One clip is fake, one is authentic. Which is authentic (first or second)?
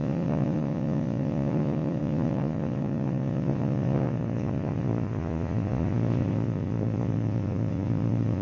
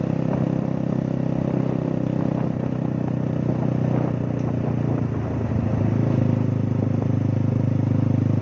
second